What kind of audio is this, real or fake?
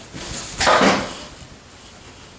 real